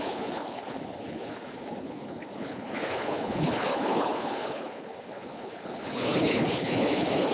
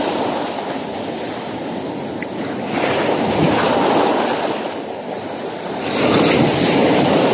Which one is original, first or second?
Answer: second